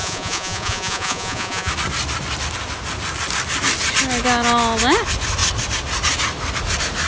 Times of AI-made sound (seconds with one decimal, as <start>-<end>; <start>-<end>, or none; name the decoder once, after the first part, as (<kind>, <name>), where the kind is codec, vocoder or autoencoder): 0.0-1.7 (vocoder, Vocos)